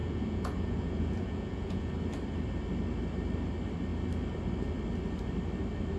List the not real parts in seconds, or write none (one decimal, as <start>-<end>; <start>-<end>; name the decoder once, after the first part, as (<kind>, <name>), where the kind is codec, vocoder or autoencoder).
0.0-1.9 (vocoder, Vocos)